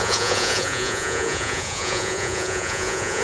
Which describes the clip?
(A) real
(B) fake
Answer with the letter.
B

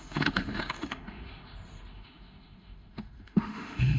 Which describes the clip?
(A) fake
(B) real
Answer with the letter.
A